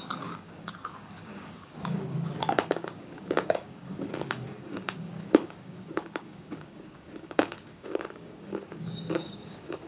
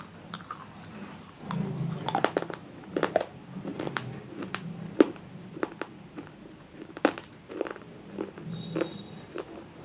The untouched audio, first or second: second